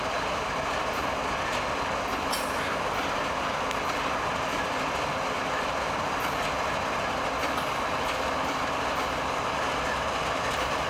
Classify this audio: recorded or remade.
recorded